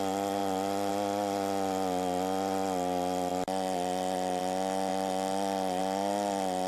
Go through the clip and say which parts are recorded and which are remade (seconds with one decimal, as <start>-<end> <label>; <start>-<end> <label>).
0.0-0.4 recorded; 0.4-0.9 remade; 0.9-3.3 recorded; 3.3-4.4 remade; 4.4-4.9 recorded; 4.9-5.8 remade; 5.8-6.7 recorded